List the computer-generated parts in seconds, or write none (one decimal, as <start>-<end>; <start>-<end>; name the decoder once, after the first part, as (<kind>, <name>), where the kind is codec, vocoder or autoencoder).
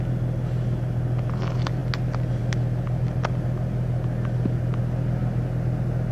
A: none